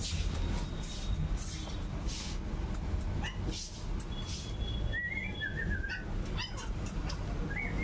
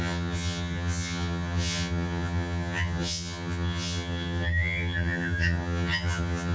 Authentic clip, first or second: first